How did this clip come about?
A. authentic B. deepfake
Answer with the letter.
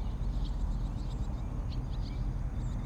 A